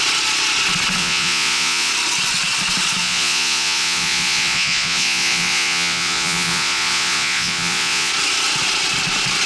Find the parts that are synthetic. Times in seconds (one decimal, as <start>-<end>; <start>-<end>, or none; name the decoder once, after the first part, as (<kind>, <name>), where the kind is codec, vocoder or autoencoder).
1.0-1.9 (vocoder, Vocos); 3.0-8.1